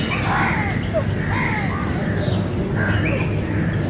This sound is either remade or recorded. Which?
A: recorded